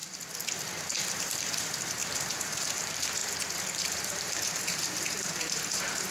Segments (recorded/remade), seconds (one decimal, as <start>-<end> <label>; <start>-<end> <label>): 0.0-1.1 recorded; 1.1-3.2 remade; 3.2-3.9 recorded; 3.9-6.1 remade